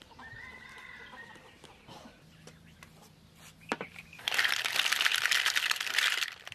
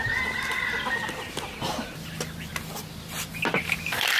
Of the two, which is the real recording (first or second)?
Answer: second